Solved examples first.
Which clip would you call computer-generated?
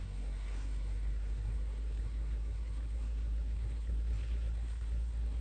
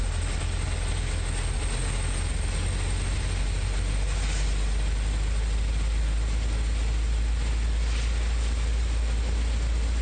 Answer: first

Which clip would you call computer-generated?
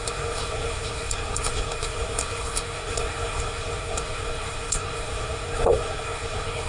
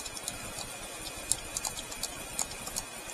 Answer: first